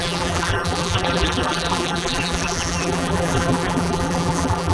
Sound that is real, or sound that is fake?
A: fake